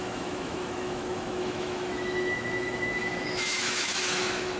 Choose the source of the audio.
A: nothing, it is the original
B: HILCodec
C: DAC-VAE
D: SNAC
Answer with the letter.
C